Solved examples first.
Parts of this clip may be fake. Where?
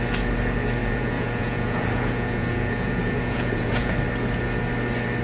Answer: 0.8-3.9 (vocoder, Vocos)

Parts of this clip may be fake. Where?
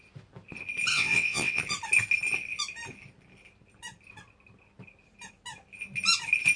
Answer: 0.9-1.6 (vocoder, WaveNeXt)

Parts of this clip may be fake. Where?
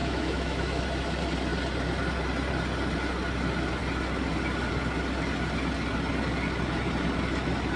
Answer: 0.0-0.8 (autoencoder, DAC-VAE)